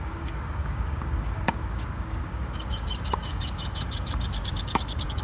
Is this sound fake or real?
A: fake